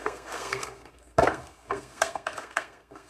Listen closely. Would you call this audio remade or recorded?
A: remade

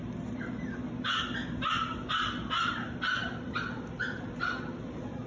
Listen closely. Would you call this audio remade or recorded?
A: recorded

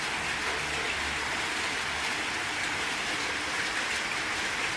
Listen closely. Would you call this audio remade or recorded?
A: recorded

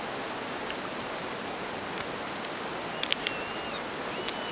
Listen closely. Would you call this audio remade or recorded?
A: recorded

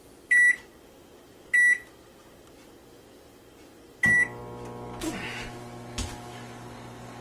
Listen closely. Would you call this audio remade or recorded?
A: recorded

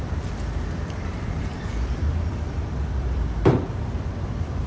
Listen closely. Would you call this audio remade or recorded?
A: remade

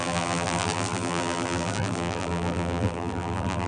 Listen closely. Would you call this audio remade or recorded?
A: remade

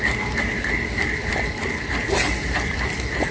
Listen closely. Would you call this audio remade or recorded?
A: recorded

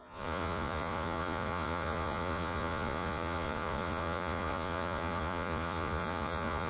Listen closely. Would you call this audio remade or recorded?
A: remade